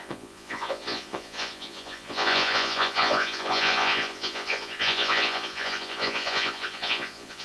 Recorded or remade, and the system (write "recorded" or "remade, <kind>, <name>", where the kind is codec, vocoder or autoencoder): remade, vocoder, Vocos